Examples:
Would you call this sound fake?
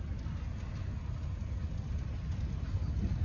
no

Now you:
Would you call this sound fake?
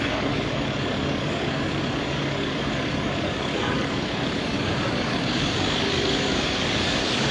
yes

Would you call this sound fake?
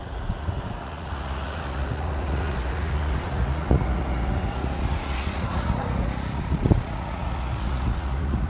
yes